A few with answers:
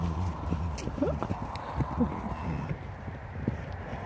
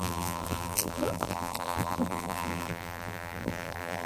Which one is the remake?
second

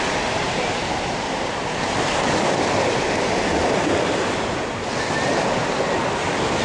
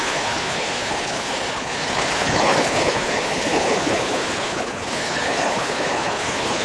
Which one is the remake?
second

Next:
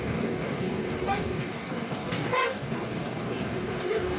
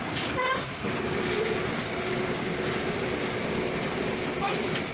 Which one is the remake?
first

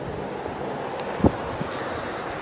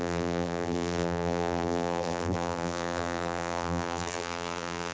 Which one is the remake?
second